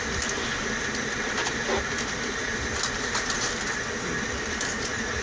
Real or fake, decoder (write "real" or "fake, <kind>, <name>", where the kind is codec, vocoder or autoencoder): real